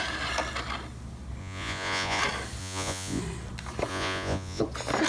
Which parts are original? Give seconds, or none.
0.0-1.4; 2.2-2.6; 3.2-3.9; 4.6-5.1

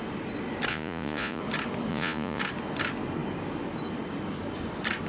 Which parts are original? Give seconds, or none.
0.0-0.7; 1.4-1.9; 2.4-5.1

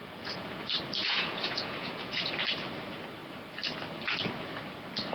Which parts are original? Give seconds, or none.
0.6-1.0; 2.3-5.1

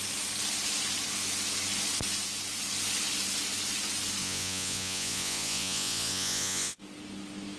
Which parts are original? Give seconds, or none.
0.0-4.2; 6.8-7.6

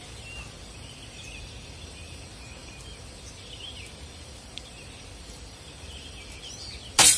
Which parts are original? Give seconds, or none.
0.0-7.2

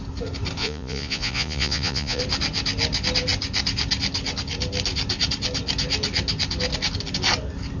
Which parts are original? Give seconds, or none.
0.0-0.6; 2.2-7.8

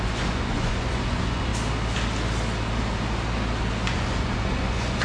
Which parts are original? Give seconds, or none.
1.5-3.9

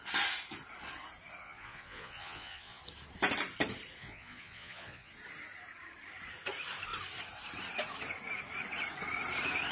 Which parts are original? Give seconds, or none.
0.0-1.4; 2.8-4.0; 5.1-9.7